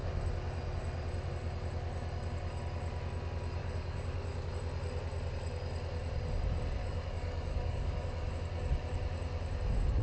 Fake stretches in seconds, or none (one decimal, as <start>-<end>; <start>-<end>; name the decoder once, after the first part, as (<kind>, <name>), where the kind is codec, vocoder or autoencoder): 3.6-4.5 (codec, DAC); 6.8-8.3